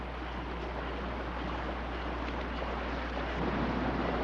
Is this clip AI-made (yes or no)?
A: no